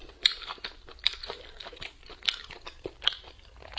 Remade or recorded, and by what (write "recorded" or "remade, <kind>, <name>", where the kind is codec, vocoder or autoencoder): recorded